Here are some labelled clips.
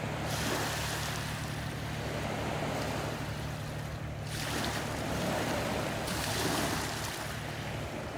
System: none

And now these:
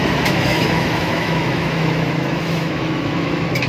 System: autoencoder, DAC-VAE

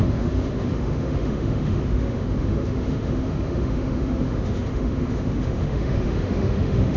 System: autoencoder, DAC-VAE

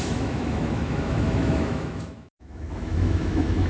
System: autoencoder, DAC-VAE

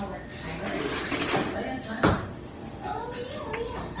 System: none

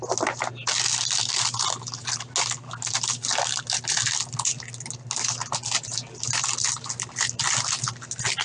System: none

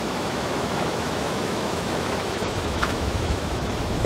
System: autoencoder, DAC-VAE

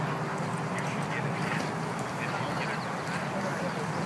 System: none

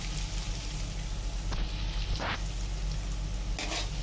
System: none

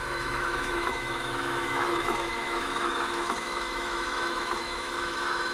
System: autoencoder, DAC-VAE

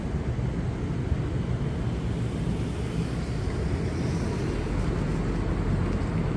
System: none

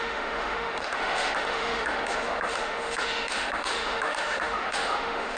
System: autoencoder, DAC-VAE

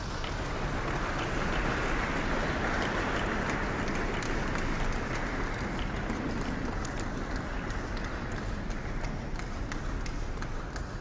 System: none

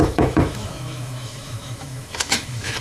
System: autoencoder, DAC-VAE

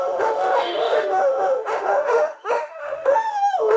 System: autoencoder, DAC-VAE